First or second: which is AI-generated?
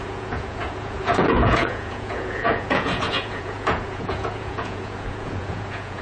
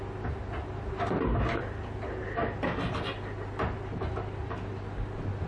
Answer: first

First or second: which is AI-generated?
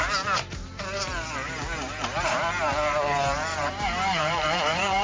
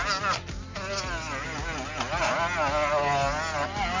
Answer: first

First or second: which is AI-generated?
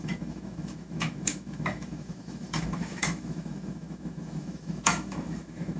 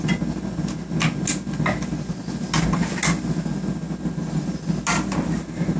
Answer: first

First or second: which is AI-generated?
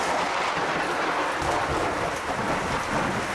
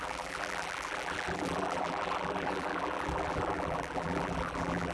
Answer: second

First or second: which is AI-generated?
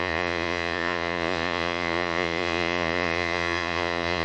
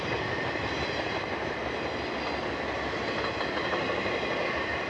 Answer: first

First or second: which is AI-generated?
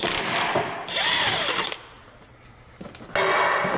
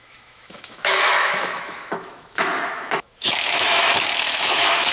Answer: second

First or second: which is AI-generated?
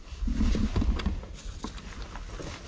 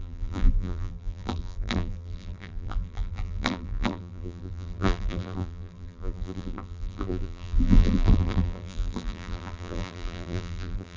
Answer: second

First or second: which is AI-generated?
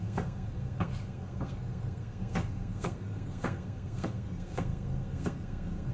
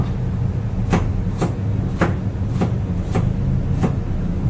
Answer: first